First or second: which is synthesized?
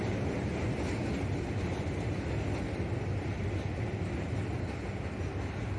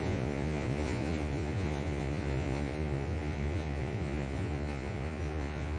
second